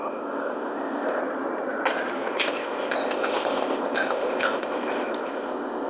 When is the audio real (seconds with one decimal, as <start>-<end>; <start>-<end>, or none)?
1.2-2.3